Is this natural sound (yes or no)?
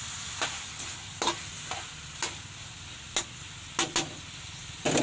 yes